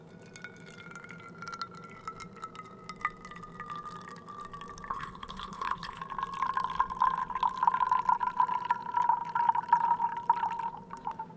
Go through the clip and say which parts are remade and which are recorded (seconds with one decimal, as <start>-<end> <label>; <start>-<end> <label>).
0.0-4.9 recorded; 4.9-6.0 remade; 6.0-11.4 recorded

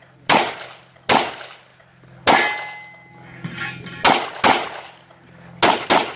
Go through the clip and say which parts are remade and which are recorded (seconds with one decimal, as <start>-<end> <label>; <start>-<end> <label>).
0.0-6.2 recorded

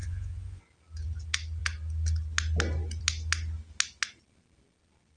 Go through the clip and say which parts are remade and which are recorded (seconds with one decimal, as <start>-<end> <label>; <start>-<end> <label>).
0.0-0.6 remade; 0.6-5.2 recorded

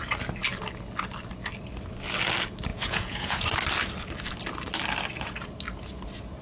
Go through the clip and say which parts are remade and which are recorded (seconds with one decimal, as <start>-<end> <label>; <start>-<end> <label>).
0.0-2.7 recorded; 2.7-3.4 remade; 3.4-6.4 recorded

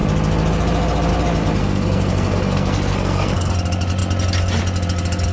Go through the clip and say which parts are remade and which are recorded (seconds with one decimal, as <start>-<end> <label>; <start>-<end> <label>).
0.0-1.6 recorded; 1.6-3.5 remade; 3.5-5.3 recorded